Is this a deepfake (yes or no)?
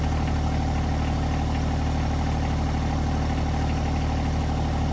no